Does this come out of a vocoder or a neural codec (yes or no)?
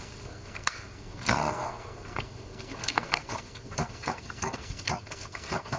yes